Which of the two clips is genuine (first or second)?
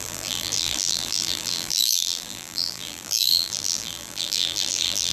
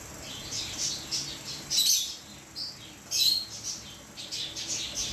second